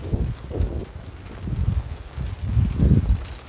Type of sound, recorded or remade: recorded